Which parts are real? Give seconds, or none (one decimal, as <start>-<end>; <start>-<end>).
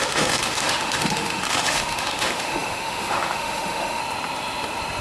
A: 4.0-5.0